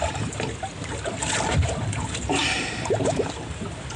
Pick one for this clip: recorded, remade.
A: remade